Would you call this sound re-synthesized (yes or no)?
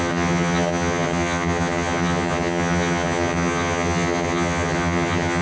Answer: yes